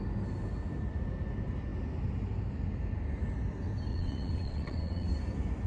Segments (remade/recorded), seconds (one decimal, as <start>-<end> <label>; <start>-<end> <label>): 0.0-3.9 recorded; 3.9-5.1 remade; 5.1-5.7 recorded